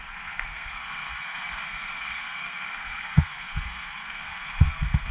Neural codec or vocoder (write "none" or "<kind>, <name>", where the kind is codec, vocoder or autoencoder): codec, SNAC